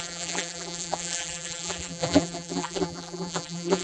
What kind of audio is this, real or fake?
fake